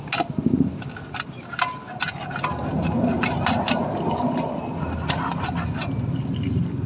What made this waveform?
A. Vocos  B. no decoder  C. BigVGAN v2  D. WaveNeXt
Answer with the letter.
B